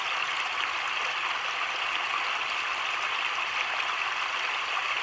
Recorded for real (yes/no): yes